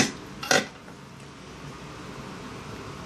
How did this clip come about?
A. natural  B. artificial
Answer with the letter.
A